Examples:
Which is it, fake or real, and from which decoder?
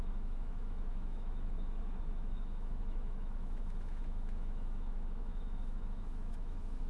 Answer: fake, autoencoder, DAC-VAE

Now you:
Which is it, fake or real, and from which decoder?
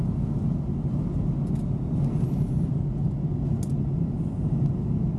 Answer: real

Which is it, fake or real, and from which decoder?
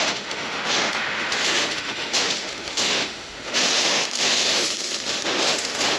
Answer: fake, autoencoder, DAC-VAE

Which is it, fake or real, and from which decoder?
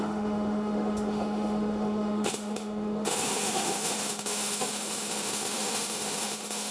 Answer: fake, autoencoder, DAC-VAE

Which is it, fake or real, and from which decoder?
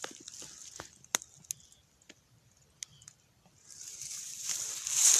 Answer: real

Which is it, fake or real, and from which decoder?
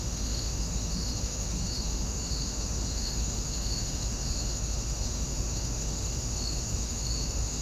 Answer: fake, autoencoder, DAC-VAE